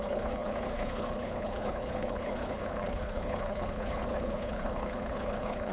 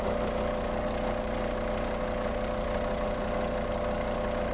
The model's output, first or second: first